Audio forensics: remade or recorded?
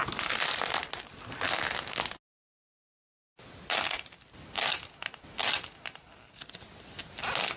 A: recorded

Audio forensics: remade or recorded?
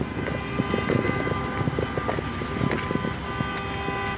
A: recorded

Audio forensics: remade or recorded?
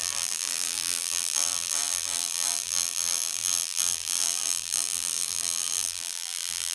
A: remade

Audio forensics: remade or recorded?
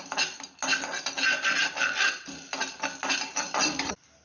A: recorded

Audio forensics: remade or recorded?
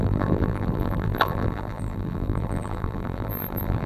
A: remade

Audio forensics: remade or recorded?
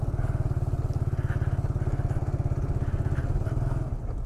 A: recorded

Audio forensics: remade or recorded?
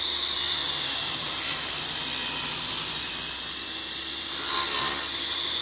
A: remade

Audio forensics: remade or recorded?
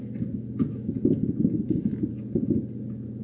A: recorded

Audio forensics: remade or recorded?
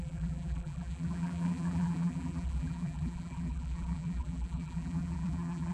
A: remade